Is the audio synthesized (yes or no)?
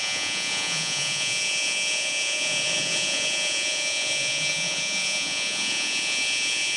yes